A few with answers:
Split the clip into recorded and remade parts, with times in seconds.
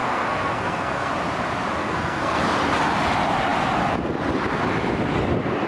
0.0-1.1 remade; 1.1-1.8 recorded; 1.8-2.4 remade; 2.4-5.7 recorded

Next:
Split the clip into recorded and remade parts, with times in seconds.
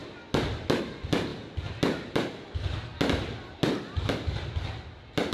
0.0-5.3 recorded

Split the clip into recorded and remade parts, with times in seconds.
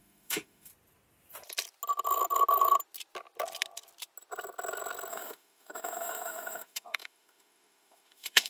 0.0-0.7 remade; 0.7-5.1 recorded; 5.1-8.5 remade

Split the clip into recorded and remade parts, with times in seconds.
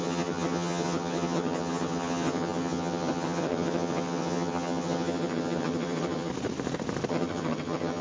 0.0-6.3 remade; 6.3-7.1 recorded; 7.1-8.0 remade